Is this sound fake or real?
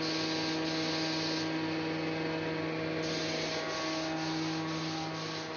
real